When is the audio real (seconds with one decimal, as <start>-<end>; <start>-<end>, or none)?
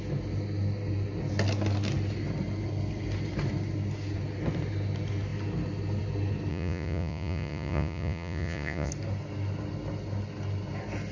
0.0-6.5; 8.9-11.1